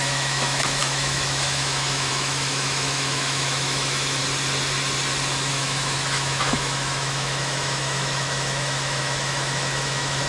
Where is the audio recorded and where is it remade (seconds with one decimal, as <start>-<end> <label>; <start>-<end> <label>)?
0.0-4.2 remade; 4.2-5.5 recorded; 5.5-10.3 remade